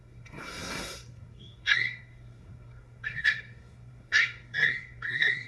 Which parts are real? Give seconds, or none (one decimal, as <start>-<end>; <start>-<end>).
none